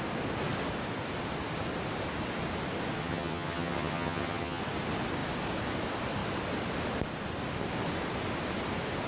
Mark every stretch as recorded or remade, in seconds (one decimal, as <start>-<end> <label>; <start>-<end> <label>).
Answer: 0.0-3.0 recorded; 3.0-4.6 remade; 4.6-9.1 recorded